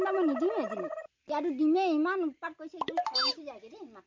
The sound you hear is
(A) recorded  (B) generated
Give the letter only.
A